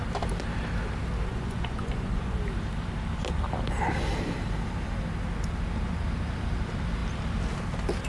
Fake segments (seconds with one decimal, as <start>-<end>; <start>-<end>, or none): 1.3-2.4